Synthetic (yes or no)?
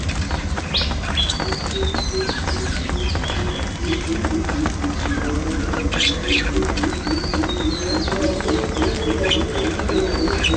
no